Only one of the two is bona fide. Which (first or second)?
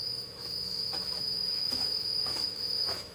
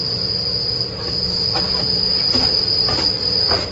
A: second